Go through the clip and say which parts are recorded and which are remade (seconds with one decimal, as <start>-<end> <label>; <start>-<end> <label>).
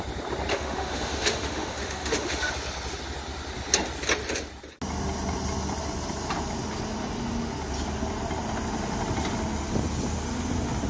0.0-0.5 recorded; 0.5-2.5 remade; 2.5-10.9 recorded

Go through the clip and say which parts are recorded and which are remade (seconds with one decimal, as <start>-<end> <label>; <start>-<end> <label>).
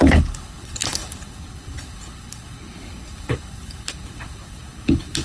0.0-5.2 remade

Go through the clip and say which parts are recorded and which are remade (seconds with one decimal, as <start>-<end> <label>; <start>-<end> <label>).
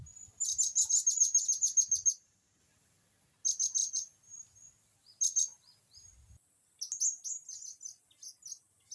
0.0-2.1 recorded; 2.1-2.6 remade; 2.6-8.9 recorded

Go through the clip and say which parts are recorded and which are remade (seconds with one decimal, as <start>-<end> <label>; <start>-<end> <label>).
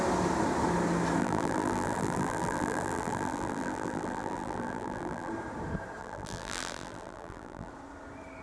0.0-1.2 recorded; 1.2-5.3 remade; 5.3-6.0 recorded; 6.0-7.7 remade; 7.7-8.4 recorded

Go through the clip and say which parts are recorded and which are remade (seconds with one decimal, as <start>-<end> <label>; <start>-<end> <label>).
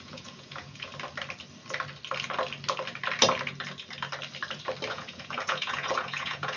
0.0-0.9 remade; 0.9-4.9 recorded; 4.9-6.6 remade